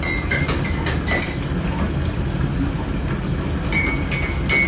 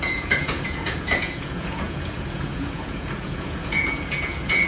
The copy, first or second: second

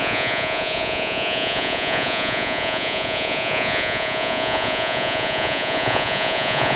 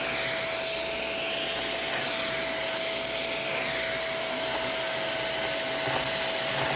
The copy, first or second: first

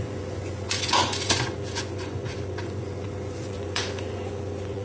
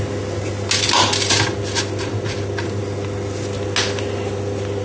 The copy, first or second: first